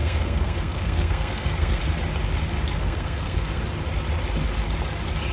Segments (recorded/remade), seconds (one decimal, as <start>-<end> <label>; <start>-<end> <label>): 0.0-1.8 remade; 1.8-2.8 recorded; 2.8-3.6 remade; 3.6-5.3 recorded